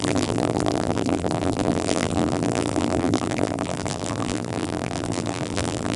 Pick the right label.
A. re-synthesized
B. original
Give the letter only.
A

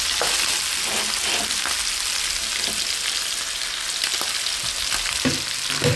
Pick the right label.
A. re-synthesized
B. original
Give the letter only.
B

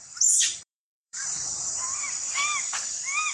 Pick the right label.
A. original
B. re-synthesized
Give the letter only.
B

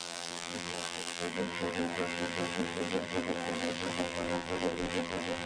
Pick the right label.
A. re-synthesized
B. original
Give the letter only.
A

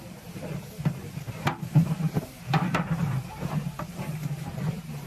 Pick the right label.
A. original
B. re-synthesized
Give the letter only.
B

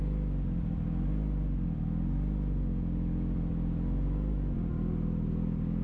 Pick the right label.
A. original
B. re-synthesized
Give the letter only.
A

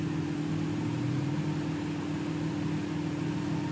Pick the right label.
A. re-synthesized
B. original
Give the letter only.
B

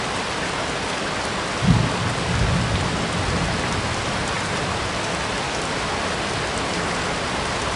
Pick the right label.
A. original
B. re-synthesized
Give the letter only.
A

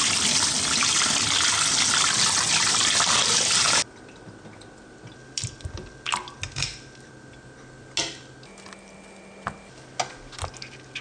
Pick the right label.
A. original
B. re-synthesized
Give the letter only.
A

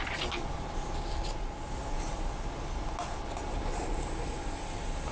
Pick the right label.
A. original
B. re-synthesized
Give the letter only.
A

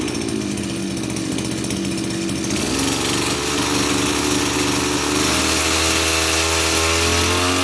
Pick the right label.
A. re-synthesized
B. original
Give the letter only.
B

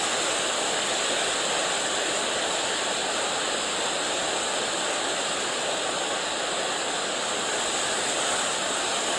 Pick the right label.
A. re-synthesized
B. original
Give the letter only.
B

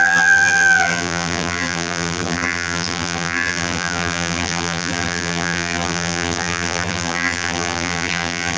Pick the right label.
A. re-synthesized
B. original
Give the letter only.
A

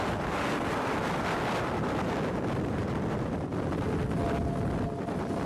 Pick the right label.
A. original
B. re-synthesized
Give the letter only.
A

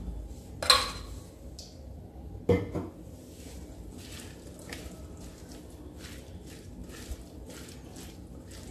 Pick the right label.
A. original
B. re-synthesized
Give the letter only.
A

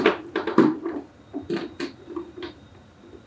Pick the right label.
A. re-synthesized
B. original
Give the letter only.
A